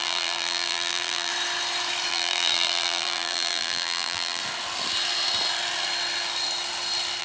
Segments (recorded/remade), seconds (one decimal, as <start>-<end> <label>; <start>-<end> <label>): 0.0-1.3 remade; 1.3-2.1 recorded; 2.1-4.4 remade; 4.4-7.2 recorded